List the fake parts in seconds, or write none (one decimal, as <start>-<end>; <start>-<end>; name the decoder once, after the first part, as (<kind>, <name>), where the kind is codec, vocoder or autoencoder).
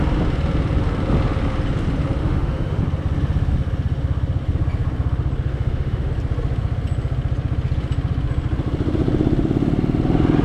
2.2-2.8 (autoencoder, DAC-VAE); 5.5-6.1